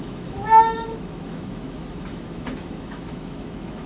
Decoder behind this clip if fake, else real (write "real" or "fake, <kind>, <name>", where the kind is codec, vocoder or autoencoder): fake, autoencoder, DAC-VAE